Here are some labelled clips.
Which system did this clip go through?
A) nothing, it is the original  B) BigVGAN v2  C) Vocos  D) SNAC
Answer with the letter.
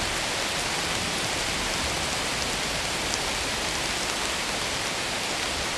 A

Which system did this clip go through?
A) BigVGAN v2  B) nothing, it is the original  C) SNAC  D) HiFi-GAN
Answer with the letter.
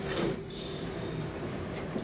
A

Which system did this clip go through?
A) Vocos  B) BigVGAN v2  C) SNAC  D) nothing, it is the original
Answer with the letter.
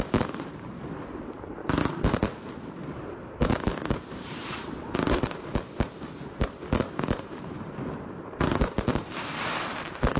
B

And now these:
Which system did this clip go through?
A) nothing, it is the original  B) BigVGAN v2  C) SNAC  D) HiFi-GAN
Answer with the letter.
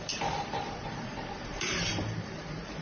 B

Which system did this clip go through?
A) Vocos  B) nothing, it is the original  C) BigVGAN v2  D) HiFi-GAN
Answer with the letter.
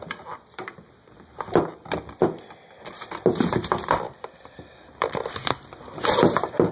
C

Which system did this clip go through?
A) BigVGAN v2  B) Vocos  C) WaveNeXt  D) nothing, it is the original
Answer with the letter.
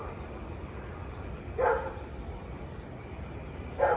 A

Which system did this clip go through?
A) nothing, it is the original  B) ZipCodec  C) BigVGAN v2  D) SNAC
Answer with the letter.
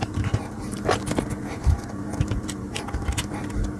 C